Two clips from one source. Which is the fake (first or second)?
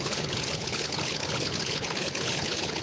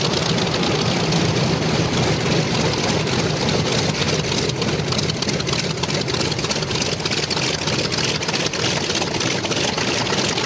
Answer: first